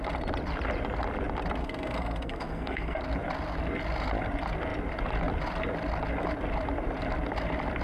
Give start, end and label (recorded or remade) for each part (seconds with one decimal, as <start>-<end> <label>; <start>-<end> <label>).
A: 0.0-1.6 recorded; 1.6-3.0 remade; 3.0-7.8 recorded